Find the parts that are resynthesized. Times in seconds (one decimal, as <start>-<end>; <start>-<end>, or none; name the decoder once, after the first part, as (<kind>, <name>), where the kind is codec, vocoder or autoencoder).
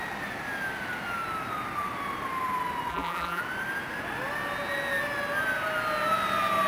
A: 2.9-3.4 (vocoder, BigVGAN v2)